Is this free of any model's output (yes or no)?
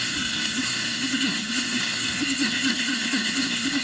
no